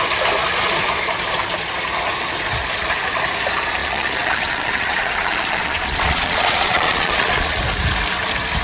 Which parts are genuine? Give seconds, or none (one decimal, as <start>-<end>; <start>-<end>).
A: 0.0-3.8; 7.6-8.6